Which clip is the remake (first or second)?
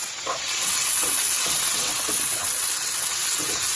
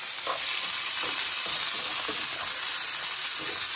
first